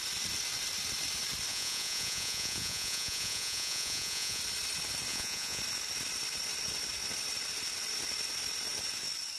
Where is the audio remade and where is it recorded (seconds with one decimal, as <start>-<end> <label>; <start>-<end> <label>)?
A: 0.0-1.5 recorded; 1.5-4.4 remade; 4.4-5.1 recorded; 5.1-5.6 remade; 5.6-9.4 recorded